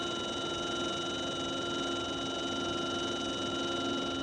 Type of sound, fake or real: real